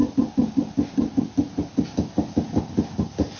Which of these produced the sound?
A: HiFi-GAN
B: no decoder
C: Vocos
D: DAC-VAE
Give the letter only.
B